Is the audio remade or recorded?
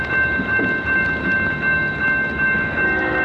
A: recorded